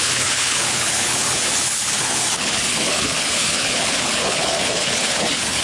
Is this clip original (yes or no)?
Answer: no